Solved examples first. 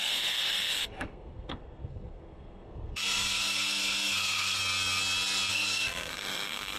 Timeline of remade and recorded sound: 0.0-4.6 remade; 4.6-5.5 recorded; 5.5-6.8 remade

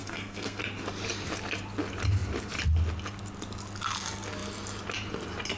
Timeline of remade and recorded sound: 0.0-0.6 remade; 0.6-5.6 recorded

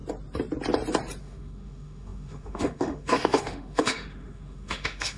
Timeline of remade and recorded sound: 0.0-1.2 recorded; 1.2-5.2 remade

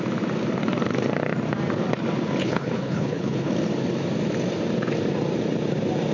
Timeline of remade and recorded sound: 0.0-2.4 recorded; 2.4-3.5 remade; 3.5-6.1 recorded

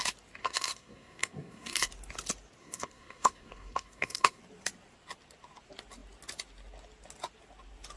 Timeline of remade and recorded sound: 0.0-0.4 recorded; 0.4-1.9 remade; 1.9-2.6 recorded; 2.6-4.4 remade; 4.4-8.0 recorded

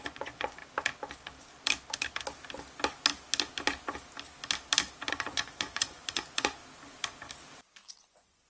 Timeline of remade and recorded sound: 0.0-0.6 remade; 0.6-5.1 recorded; 5.1-6.6 remade; 6.6-8.0 recorded; 8.0-8.5 remade